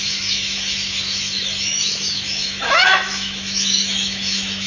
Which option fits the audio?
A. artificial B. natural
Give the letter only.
A